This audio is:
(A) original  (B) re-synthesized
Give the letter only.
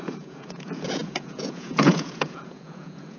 B